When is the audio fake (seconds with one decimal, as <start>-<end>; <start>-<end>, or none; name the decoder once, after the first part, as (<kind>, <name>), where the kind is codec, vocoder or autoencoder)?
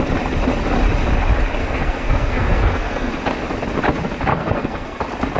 1.6-3.1 (codec, SNAC); 4.3-5.0